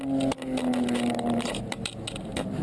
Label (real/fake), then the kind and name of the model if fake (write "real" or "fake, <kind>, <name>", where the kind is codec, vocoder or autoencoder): real